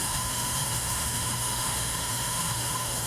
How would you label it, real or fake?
fake